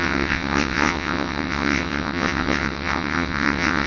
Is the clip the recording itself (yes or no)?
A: no